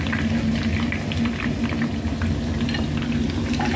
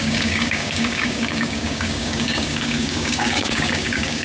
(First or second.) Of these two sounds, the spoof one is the second